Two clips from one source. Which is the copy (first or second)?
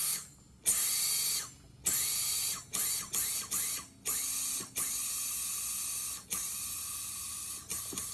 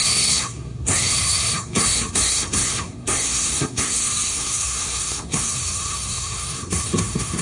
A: second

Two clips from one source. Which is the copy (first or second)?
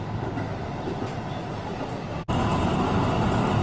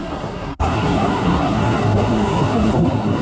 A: second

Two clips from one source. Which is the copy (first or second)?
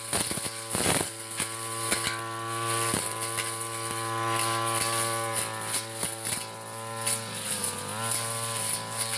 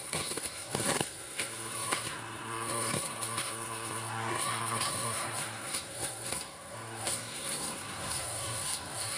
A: second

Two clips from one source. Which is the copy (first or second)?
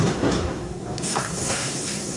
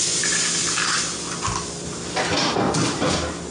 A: first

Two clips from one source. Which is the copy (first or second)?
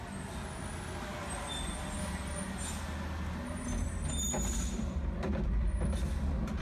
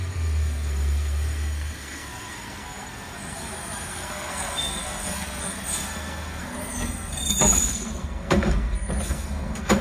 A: second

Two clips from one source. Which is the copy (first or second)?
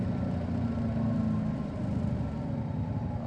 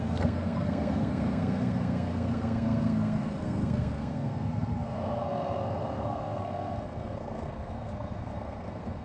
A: second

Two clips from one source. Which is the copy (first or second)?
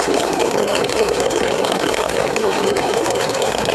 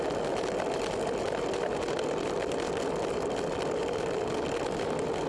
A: first